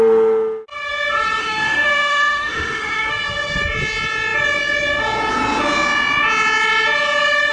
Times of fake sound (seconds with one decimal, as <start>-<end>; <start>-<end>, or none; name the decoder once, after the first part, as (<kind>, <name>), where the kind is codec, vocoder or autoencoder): 1.4-3.1 (autoencoder, DAC-VAE)